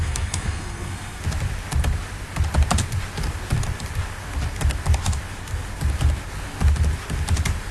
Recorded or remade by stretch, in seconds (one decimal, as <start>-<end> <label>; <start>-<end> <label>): 0.0-1.2 remade; 1.2-7.7 recorded